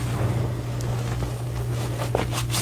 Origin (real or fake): real